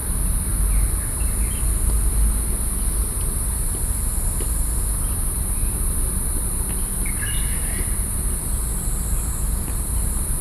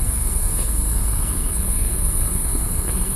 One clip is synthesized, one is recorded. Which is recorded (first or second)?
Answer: first